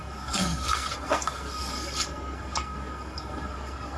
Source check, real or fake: fake